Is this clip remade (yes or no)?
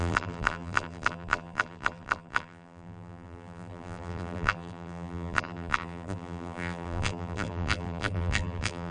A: yes